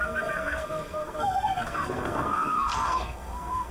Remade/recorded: remade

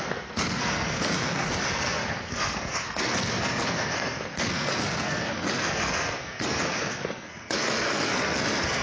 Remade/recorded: remade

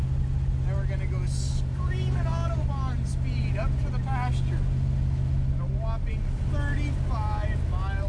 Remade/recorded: recorded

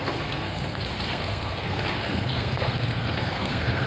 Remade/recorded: remade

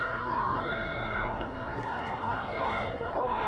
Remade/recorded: remade